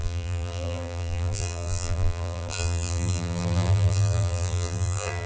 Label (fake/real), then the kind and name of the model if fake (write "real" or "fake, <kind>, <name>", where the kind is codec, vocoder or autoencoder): fake, vocoder, BigVGAN v2